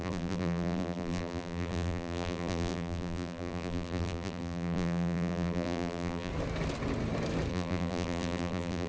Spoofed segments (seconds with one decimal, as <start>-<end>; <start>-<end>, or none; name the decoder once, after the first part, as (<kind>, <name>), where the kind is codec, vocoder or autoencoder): 0.0-6.3 (vocoder, BigVGAN v2); 7.5-8.9